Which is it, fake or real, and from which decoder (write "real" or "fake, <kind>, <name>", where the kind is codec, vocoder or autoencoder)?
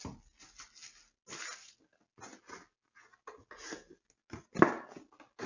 real